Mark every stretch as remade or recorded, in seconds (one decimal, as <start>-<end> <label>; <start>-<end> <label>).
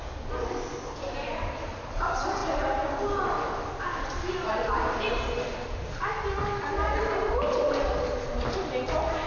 0.0-9.3 recorded